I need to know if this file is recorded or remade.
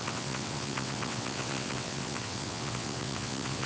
remade